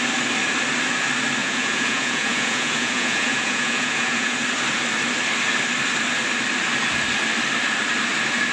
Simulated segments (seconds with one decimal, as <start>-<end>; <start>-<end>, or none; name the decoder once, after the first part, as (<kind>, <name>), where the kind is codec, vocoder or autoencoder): 1.4-4.4 (vocoder, Vocos)